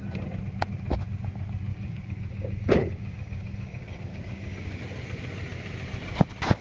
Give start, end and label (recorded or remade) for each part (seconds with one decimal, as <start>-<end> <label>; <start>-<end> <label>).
0.0-1.7 recorded; 1.7-4.8 remade; 4.8-6.6 recorded